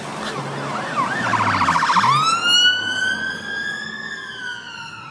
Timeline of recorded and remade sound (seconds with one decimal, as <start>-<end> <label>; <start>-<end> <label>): 0.0-5.1 recorded